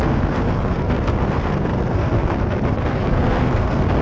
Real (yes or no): no